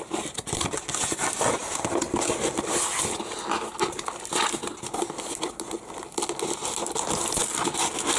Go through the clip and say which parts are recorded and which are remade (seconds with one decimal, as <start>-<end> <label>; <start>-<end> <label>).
0.0-8.2 recorded